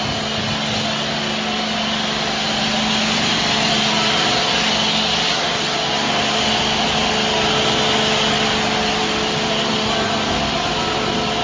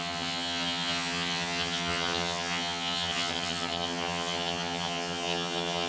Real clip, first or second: first